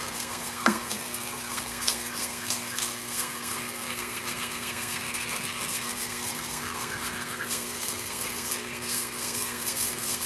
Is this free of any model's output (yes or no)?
no